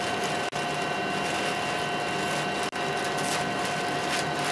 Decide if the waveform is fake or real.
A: real